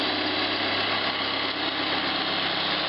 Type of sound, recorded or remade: recorded